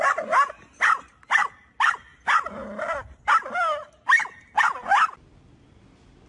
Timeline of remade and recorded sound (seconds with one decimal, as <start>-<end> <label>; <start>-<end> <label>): 0.0-6.3 recorded